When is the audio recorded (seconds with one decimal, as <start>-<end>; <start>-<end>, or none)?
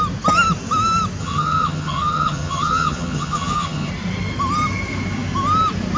0.0-1.2; 3.9-6.0